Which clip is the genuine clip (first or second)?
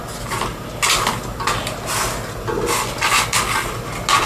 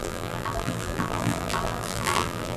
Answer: first